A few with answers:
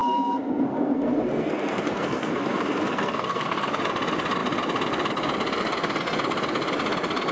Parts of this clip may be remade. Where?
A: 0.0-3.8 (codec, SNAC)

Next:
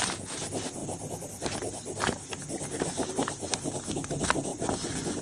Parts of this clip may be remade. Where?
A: 4.5-5.2 (vocoder, Vocos)

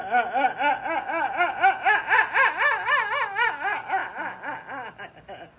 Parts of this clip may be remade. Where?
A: none

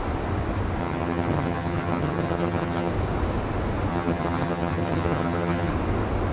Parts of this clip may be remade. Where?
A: 0.8-2.9 (vocoder, HiFi-GAN); 3.9-5.7

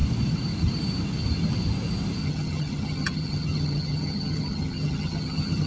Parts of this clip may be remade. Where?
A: 2.2-5.7 (vocoder, HiFi-GAN)